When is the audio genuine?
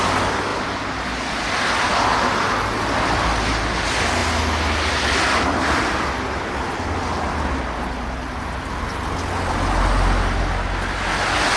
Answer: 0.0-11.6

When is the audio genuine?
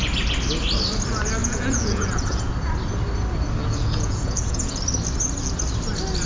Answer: 0.0-1.4; 2.5-3.6; 4.8-6.3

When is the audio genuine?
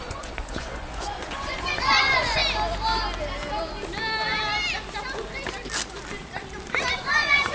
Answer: 2.4-6.9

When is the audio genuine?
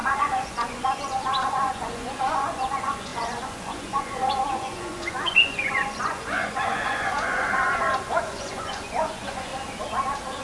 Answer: 9.5-10.4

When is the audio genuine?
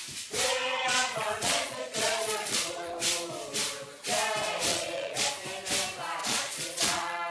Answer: 0.0-0.5; 2.9-4.7; 5.3-6.2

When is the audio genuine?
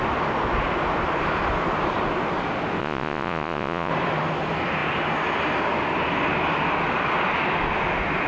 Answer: 0.0-2.8; 3.9-8.3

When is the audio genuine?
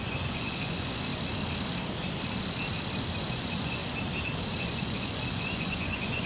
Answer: 1.1-3.3; 3.8-4.6